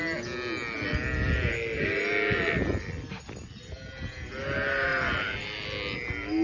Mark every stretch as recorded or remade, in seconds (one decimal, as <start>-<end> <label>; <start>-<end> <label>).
0.0-6.4 recorded